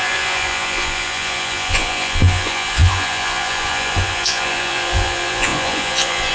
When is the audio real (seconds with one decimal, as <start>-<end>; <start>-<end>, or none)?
none

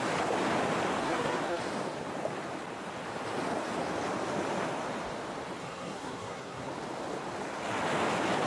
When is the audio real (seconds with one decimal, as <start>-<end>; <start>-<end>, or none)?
0.0-1.0; 1.6-5.6; 6.7-8.5

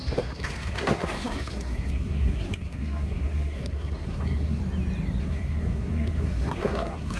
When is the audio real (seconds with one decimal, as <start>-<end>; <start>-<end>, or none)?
4.6-5.2

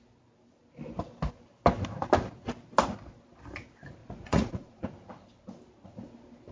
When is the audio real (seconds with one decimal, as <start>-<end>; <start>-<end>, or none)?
0.0-4.0; 4.8-6.5

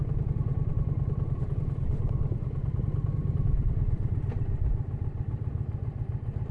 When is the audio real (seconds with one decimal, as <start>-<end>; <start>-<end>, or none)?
0.0-0.5; 2.8-3.2; 4.2-6.5

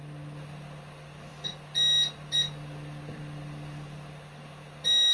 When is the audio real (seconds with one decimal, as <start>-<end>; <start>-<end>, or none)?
0.0-5.1